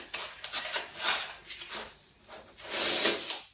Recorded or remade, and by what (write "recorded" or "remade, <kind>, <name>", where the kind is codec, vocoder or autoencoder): recorded